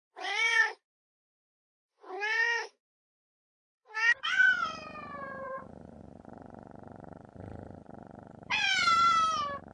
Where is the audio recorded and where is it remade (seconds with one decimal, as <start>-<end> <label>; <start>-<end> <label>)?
0.0-8.9 remade; 8.9-9.7 recorded

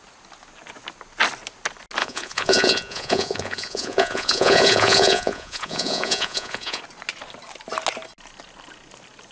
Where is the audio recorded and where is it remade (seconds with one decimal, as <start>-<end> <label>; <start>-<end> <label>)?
0.0-2.0 recorded; 2.0-6.8 remade; 6.8-9.3 recorded

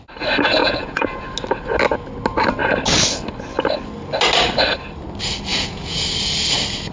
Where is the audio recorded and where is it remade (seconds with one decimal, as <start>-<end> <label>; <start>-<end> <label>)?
0.0-0.6 recorded; 0.6-1.2 remade; 1.2-5.5 recorded; 5.5-6.0 remade; 6.0-6.9 recorded

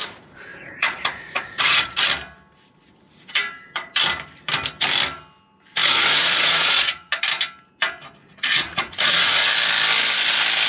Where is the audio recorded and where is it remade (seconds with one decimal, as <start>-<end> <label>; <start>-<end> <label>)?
0.0-0.5 recorded; 0.5-2.0 remade; 2.0-5.8 recorded; 5.8-7.2 remade; 7.2-8.2 recorded; 8.2-9.5 remade; 9.5-10.7 recorded

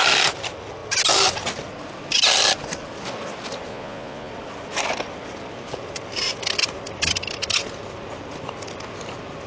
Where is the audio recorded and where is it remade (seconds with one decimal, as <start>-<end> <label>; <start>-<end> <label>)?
0.0-3.7 recorded; 3.7-4.3 remade; 4.3-9.5 recorded

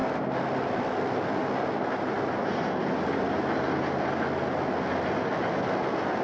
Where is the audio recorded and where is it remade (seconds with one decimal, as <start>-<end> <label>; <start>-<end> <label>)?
0.0-6.2 recorded

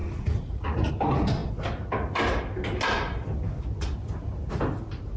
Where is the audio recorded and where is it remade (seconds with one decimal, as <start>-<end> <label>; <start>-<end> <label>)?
0.0-0.9 remade; 0.9-5.2 recorded

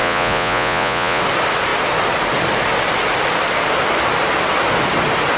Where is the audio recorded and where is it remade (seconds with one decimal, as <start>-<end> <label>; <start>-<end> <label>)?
0.0-1.2 remade; 1.2-5.4 recorded